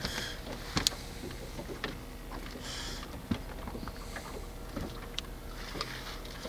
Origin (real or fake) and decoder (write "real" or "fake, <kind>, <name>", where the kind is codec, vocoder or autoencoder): real